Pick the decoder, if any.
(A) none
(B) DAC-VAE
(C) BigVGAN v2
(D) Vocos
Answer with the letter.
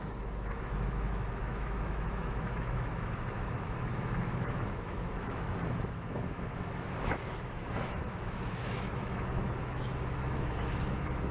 B